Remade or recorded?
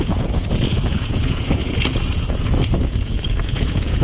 remade